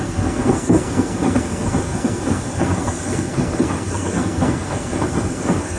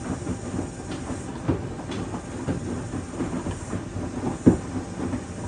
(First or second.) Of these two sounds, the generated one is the first